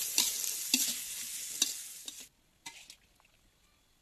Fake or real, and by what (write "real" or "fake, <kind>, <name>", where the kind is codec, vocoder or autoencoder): real